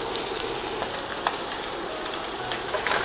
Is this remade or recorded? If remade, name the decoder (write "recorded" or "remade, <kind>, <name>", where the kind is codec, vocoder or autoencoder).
remade, vocoder, BigVGAN v2